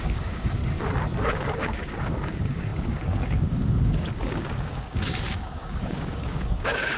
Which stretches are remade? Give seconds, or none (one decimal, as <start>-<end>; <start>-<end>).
0.0-0.6; 1.2-7.0